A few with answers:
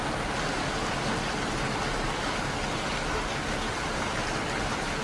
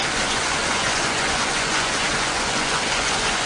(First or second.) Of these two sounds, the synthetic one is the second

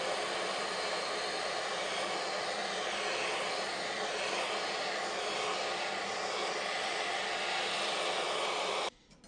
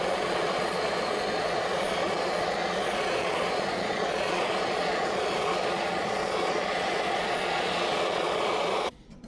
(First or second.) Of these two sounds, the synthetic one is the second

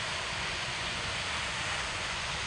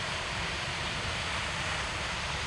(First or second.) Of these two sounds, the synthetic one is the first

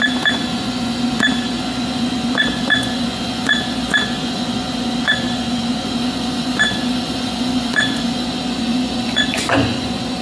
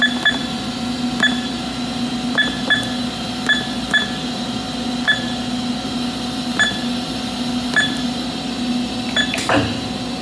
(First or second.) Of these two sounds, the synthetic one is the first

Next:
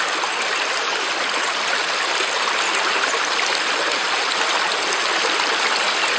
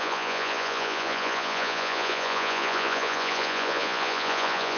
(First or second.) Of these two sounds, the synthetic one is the second